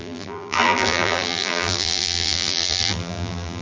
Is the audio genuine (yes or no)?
no